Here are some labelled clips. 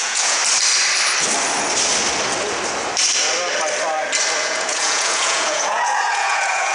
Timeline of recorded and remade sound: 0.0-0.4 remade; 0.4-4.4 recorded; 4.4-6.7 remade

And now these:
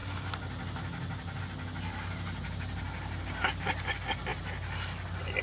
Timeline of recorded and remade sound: 0.0-5.4 recorded

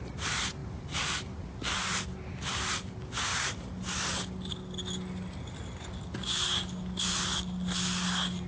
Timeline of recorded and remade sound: 0.0-8.5 recorded

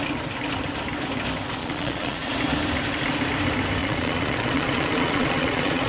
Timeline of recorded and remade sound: 0.0-1.6 recorded; 1.6-2.3 remade; 2.3-3.8 recorded; 3.8-5.9 remade

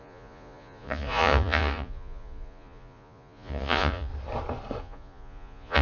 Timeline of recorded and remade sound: 0.0-4.1 remade; 4.1-4.8 recorded; 4.8-5.8 remade

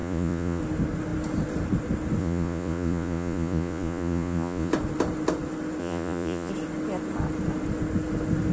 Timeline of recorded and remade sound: 0.0-0.6 remade; 0.6-2.2 recorded; 2.2-4.7 remade; 4.7-5.8 recorded; 5.8-6.5 remade; 6.5-8.5 recorded

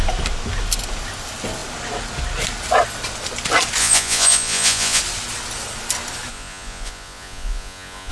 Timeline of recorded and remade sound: 0.0-3.8 recorded; 3.8-5.0 remade; 5.0-6.3 recorded; 6.3-8.1 remade